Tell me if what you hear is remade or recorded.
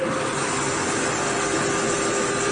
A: recorded